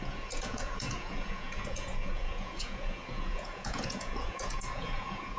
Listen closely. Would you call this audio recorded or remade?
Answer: remade